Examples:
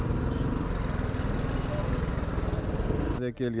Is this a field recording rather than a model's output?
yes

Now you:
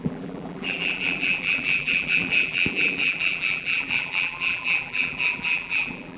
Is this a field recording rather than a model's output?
no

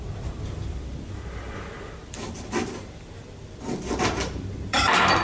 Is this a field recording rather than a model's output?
no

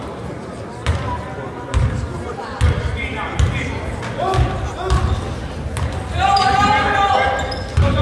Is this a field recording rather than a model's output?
yes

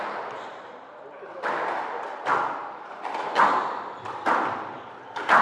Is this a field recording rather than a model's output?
no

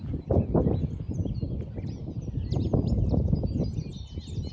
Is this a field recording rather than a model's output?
yes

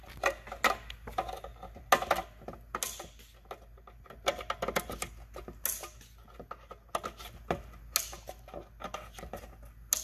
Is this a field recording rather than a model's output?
yes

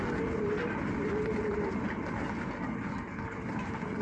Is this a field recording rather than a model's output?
yes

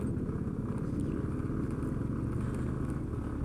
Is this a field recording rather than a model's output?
yes